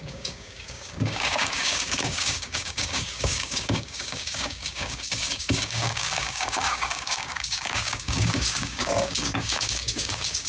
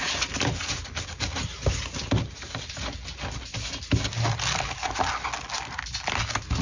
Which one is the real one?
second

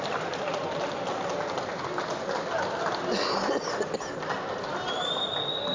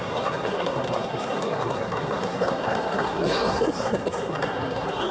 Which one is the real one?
first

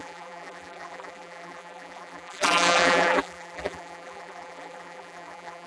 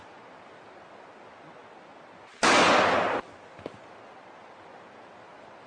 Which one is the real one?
second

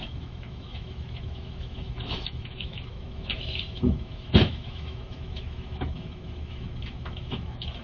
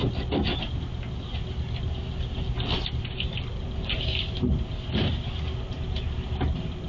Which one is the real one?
second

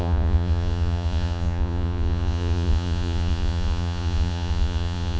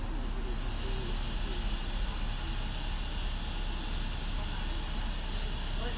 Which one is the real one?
second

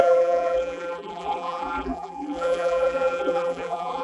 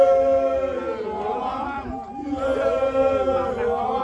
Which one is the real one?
second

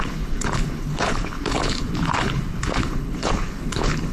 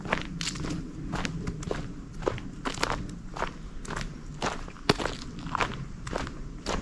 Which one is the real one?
second